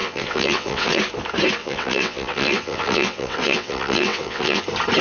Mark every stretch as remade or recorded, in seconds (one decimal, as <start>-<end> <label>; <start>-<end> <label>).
0.0-1.0 remade; 1.0-1.6 recorded; 1.6-4.6 remade; 4.6-5.0 recorded